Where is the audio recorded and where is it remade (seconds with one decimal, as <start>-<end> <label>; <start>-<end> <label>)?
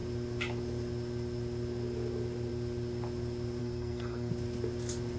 0.0-3.6 recorded; 3.6-4.3 remade; 4.3-5.2 recorded